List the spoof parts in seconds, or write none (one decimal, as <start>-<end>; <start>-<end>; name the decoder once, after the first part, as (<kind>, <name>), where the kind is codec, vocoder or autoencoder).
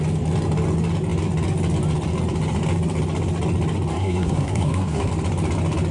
3.9-5.1 (codec, SNAC)